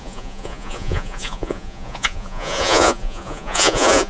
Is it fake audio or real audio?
fake